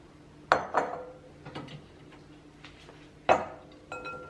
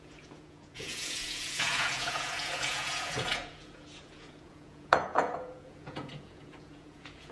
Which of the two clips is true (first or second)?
first